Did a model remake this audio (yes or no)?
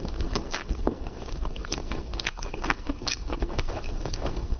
yes